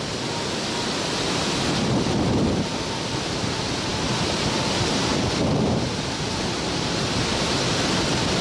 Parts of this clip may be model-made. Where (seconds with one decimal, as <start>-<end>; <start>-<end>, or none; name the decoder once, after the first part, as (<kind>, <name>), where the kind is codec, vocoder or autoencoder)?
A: none